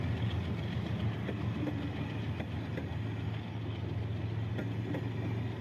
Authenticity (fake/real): real